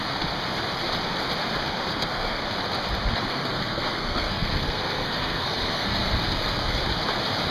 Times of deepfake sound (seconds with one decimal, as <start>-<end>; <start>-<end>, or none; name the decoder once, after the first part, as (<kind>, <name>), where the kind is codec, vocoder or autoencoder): 1.9-2.4 (codec, SNAC); 3.3-6.8

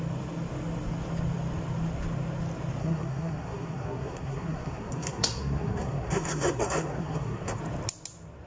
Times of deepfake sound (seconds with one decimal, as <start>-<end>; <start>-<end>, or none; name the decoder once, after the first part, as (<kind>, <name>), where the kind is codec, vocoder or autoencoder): 2.8-7.6 (codec, SNAC)

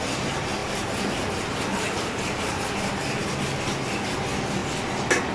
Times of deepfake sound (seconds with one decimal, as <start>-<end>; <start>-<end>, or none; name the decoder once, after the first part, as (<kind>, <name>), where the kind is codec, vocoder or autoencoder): 0.6-2.6 (vocoder, BigVGAN v2)

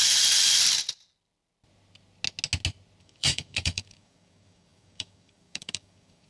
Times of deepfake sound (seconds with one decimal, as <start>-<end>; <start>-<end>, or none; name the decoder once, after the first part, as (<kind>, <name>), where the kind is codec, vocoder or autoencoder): 3.0-6.3 (codec, DAC)

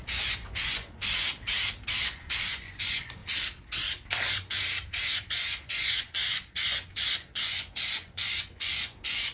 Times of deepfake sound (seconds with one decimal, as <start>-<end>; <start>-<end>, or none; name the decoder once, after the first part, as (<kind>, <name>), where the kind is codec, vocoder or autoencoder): 0.0-1.3 (vocoder, Vocos); 1.9-3.2; 5.3-9.3

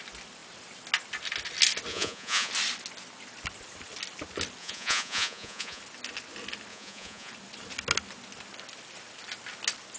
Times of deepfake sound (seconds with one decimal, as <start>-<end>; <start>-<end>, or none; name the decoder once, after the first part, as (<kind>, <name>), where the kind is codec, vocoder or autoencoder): 1.9-2.5 (vocoder, Vocos); 4.6-5.8; 6.7-7.3

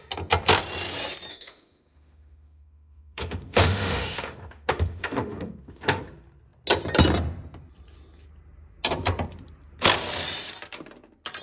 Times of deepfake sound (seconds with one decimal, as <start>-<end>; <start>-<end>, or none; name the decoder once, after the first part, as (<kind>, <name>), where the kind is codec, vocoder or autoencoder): 1.3-6.0 (autoencoder, DAC-VAE)

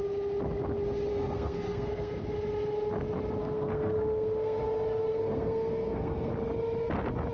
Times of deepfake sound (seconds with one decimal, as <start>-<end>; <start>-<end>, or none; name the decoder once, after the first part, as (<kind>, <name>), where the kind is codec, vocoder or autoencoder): 1.1-2.2 (codec, SNAC); 3.4-4.6; 5.1-6.3